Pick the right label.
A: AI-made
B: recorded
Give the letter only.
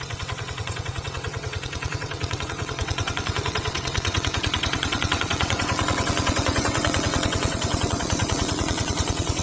A